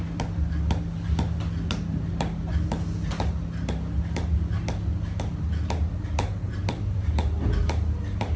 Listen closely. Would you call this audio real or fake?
real